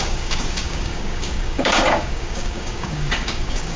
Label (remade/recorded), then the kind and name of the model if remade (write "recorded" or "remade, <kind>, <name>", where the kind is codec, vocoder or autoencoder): remade, codec, DAC